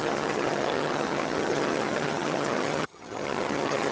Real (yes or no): no